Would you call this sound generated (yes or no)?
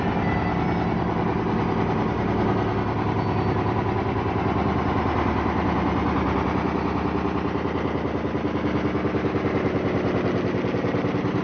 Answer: no